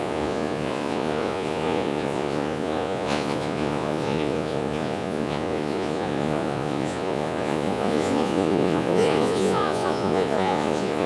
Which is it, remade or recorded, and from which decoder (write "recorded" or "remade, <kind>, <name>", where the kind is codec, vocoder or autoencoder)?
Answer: remade, vocoder, Vocos